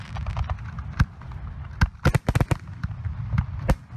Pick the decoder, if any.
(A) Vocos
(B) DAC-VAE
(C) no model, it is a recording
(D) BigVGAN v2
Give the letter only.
C